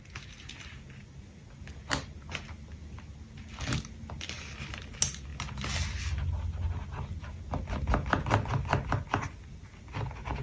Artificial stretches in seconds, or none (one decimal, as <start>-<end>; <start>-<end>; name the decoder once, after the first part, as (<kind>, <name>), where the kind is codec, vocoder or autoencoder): none